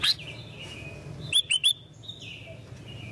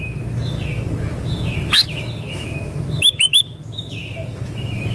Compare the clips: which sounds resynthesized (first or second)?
second